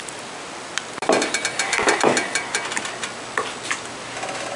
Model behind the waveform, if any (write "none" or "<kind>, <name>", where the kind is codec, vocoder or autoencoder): none